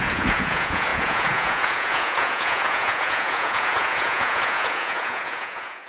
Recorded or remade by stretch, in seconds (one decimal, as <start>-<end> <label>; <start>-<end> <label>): 0.0-5.9 remade